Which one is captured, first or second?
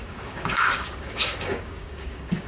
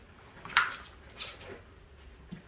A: second